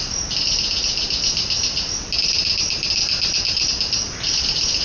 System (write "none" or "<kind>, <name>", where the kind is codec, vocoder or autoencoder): none